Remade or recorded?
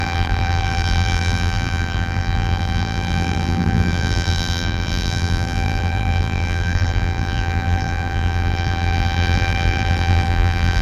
remade